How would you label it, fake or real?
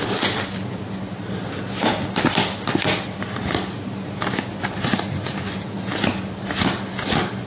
real